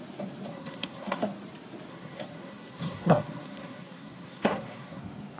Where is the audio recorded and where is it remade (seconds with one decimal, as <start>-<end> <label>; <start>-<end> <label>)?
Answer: 0.0-0.5 recorded; 0.5-1.3 remade; 1.3-1.9 recorded; 1.9-5.0 remade; 5.0-5.4 recorded

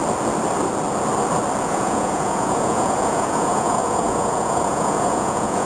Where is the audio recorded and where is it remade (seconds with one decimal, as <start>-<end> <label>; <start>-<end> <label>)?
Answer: 0.0-1.6 recorded; 1.6-5.7 remade

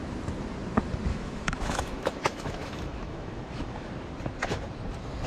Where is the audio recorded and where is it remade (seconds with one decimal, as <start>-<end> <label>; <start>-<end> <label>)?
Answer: 0.0-1.1 recorded; 1.1-3.9 remade; 3.9-5.3 recorded

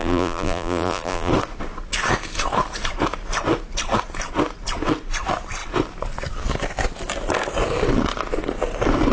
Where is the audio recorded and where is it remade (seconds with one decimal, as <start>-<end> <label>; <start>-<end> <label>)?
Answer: 0.0-1.3 remade; 1.3-9.1 recorded

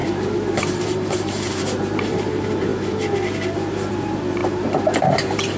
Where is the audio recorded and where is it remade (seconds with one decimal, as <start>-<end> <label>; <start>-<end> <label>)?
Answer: 0.0-2.7 remade; 2.7-3.9 recorded; 3.9-4.4 remade; 4.4-5.0 recorded; 5.0-5.6 remade